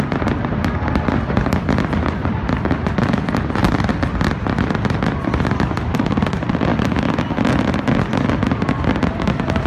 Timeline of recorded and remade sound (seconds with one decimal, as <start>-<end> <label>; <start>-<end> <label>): 0.0-3.6 remade; 3.6-4.6 recorded; 4.6-9.7 remade

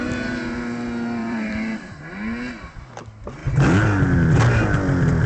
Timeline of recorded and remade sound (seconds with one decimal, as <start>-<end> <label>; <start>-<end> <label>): 0.0-1.2 recorded; 1.2-2.0 remade; 2.0-5.3 recorded